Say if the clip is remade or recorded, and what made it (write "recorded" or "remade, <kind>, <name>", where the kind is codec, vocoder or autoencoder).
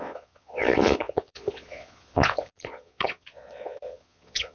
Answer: remade, vocoder, Vocos